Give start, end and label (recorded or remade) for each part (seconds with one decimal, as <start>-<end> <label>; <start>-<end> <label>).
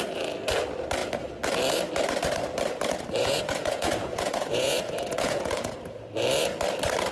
0.0-3.2 recorded; 3.2-5.7 remade; 5.7-7.1 recorded